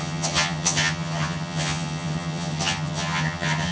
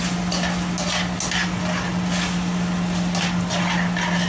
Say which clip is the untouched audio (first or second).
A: second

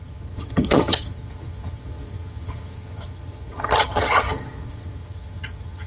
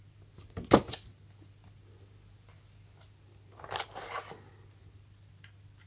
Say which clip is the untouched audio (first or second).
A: second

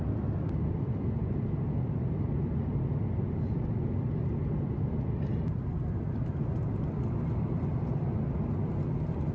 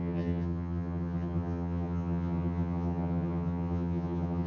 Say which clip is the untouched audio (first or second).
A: first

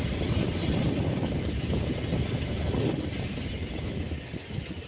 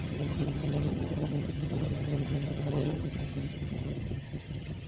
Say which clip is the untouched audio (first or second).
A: first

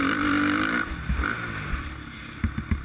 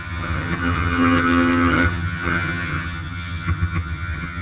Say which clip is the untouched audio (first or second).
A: first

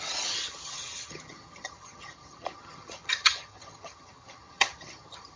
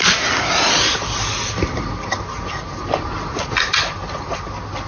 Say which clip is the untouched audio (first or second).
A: second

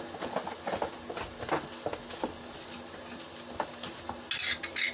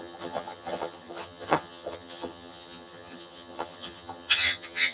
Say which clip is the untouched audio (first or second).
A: first